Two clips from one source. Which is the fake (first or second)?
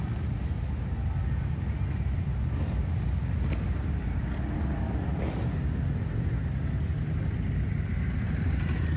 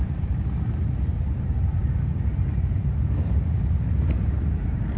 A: second